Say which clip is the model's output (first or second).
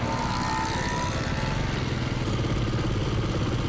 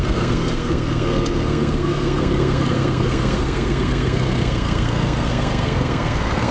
second